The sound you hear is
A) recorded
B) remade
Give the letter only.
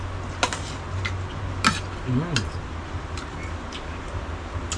A